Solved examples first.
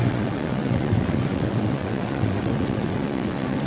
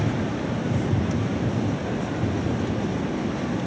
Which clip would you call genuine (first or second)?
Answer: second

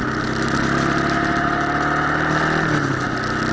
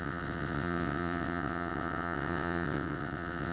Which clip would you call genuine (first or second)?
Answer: first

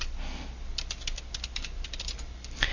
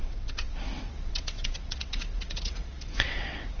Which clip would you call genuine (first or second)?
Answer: first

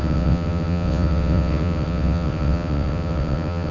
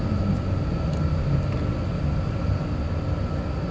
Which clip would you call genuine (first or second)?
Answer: second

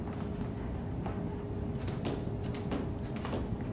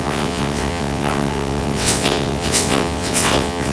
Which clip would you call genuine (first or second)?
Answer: first